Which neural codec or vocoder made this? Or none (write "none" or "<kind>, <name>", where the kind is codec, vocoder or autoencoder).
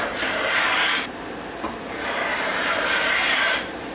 vocoder, BigVGAN v2